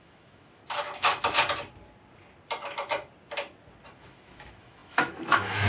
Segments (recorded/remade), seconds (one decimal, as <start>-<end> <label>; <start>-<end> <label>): 0.0-0.6 remade; 0.6-4.0 recorded; 4.0-5.7 remade